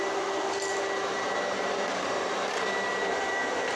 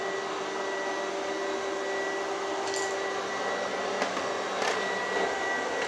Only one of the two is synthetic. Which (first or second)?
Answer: first